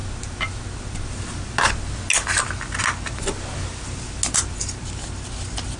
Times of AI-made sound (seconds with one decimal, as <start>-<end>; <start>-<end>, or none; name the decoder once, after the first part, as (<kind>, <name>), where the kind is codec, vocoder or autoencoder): none